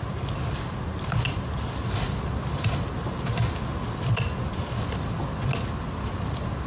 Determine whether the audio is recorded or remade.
recorded